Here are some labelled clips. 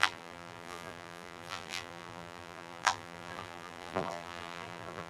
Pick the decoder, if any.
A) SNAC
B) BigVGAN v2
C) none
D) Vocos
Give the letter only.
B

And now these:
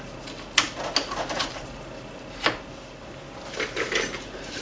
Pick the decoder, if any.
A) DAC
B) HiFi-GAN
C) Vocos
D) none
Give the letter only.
D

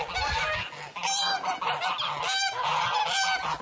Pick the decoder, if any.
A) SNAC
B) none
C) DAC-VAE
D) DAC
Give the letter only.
B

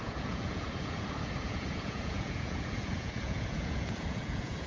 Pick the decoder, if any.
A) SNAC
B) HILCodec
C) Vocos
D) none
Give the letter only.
C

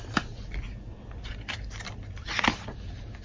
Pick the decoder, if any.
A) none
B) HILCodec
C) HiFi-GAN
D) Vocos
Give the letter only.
A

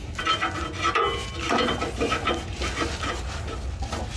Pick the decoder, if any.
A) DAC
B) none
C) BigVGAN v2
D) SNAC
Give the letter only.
B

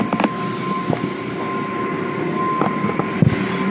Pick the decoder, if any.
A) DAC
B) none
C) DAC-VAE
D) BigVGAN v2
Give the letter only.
B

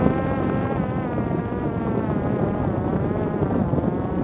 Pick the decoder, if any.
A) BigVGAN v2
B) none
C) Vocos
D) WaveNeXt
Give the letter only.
A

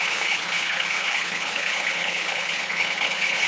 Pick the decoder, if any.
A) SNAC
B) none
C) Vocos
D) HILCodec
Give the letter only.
D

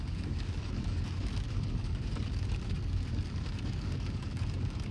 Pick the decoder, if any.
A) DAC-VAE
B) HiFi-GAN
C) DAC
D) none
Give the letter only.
C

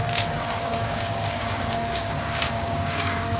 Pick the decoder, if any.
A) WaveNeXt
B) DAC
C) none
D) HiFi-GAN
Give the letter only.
B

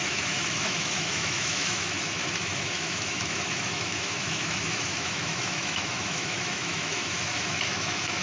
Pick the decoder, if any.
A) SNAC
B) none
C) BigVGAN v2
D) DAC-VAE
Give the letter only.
D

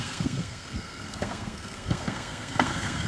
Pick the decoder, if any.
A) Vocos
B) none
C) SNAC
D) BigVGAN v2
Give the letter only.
C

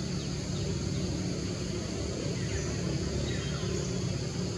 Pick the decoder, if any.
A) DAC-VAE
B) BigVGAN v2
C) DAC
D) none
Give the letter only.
D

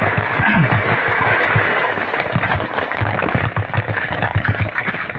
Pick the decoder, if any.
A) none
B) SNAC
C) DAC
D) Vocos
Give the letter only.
C